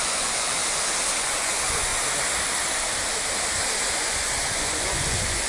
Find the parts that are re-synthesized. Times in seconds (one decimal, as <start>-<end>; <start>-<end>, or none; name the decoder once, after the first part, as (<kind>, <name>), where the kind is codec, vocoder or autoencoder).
0.0-0.6 (vocoder, Vocos); 1.2-1.9; 3.9-5.5